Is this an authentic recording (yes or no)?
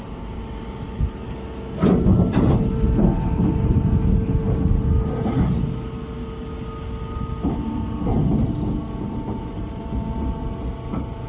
yes